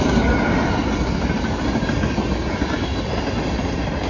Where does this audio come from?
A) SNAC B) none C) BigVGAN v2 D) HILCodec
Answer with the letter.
B